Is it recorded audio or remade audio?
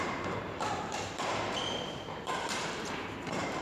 remade